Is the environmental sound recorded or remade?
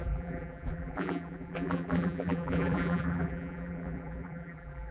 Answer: remade